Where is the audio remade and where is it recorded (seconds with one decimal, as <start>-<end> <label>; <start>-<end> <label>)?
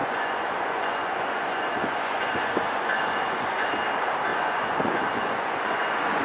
0.0-3.7 remade; 3.7-4.3 recorded; 4.3-6.2 remade